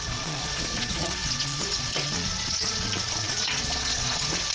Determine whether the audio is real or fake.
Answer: fake